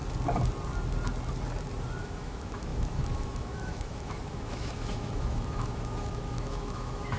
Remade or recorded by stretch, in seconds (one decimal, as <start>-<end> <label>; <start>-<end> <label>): 0.0-2.0 recorded; 2.0-7.2 remade